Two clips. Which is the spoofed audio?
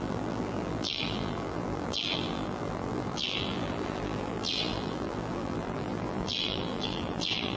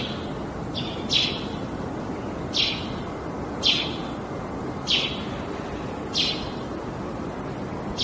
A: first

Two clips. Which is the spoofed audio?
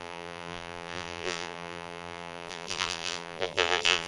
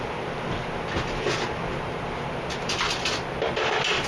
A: first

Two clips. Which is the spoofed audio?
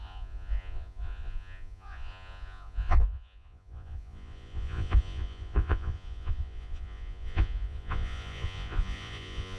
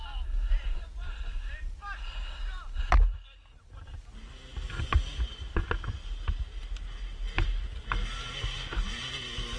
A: first